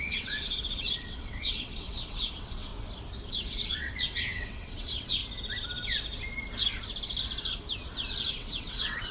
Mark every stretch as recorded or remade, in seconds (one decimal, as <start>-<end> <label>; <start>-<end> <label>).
0.0-2.7 remade; 2.7-3.3 recorded; 3.3-5.2 remade; 5.2-8.3 recorded; 8.3-9.1 remade